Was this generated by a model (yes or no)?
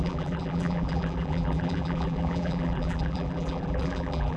yes